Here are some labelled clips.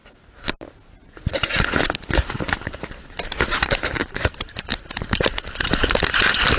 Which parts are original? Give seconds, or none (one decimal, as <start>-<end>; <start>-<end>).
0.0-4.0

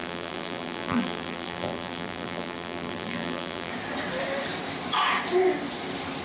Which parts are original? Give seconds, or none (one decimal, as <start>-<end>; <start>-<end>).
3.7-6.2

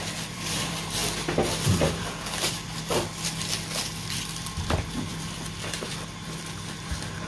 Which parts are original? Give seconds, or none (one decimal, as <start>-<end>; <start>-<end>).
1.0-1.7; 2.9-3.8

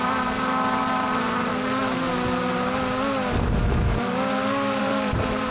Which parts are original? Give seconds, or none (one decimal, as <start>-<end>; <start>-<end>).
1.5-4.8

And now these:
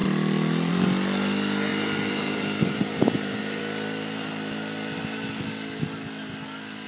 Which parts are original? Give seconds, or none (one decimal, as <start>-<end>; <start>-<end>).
0.0-1.7; 3.6-6.9

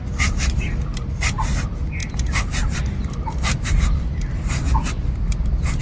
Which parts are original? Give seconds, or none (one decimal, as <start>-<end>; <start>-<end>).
0.0-5.8